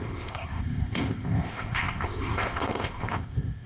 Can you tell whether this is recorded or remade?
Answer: remade